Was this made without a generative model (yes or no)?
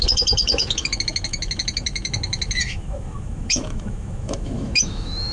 no